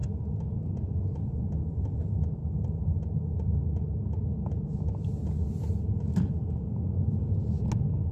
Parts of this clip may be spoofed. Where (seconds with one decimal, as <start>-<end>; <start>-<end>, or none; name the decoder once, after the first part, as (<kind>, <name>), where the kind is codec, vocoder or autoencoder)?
none